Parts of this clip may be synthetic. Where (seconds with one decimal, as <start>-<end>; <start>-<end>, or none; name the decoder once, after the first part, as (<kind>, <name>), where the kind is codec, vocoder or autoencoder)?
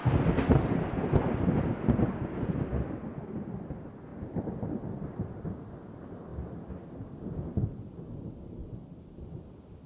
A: 0.0-2.7 (vocoder, BigVGAN v2); 4.1-5.4; 6.3-7.0; 8.6-9.5